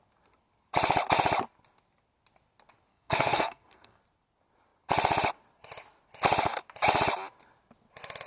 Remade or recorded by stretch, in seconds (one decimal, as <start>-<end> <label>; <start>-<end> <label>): 0.0-2.9 recorded; 2.9-4.0 remade; 4.0-8.3 recorded